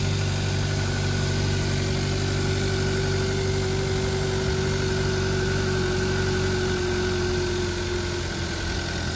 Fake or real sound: real